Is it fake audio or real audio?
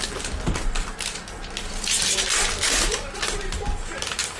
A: real